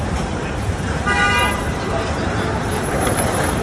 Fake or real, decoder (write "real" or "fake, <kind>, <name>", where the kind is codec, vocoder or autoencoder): fake, vocoder, BigVGAN v2